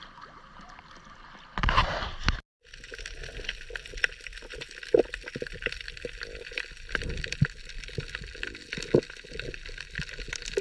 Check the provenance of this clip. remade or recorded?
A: recorded